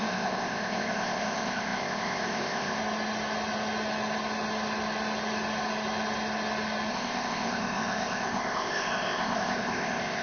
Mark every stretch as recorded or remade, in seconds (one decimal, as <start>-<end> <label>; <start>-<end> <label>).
0.0-2.8 remade; 2.8-6.9 recorded; 6.9-10.2 remade